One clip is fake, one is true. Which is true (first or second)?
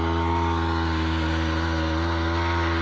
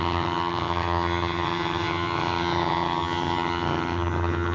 first